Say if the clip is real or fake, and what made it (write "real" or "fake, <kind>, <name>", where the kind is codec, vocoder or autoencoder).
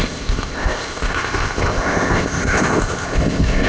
fake, codec, ZipCodec